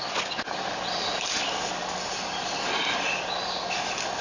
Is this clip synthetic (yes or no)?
no